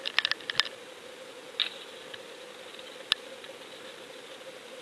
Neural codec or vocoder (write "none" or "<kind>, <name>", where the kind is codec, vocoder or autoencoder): none